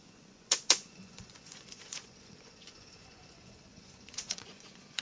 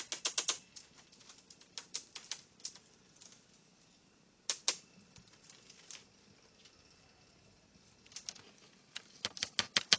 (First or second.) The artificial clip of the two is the first